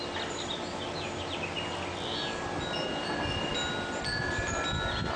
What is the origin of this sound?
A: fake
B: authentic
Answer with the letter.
B